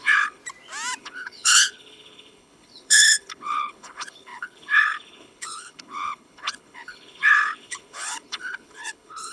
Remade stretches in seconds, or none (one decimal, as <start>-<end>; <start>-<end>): 0.0-0.4; 1.0-9.3